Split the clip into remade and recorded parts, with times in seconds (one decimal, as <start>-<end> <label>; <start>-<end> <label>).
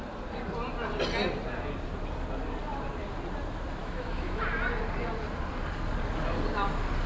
0.0-3.8 recorded; 3.8-4.4 remade; 4.4-7.1 recorded